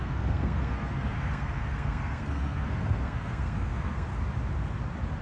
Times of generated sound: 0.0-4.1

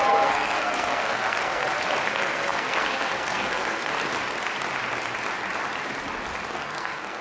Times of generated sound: 0.0-1.6; 2.1-3.9; 6.5-7.2

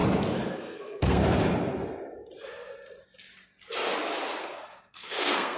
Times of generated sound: 0.5-1.2; 4.4-5.6

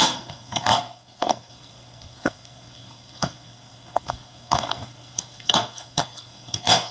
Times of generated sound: 0.0-6.9

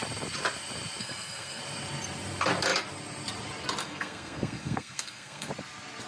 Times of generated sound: 1.0-1.6; 3.8-5.5

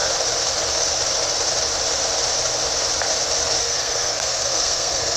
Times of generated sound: 3.6-5.2